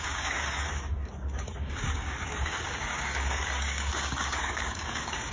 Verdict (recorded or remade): remade